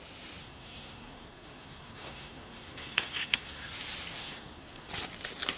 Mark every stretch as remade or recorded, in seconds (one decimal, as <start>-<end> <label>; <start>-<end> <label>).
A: 0.0-0.4 recorded; 0.4-3.7 remade; 3.7-4.2 recorded; 4.2-4.9 remade; 4.9-5.6 recorded